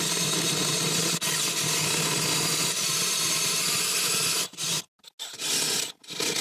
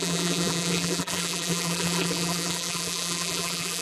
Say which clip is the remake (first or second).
second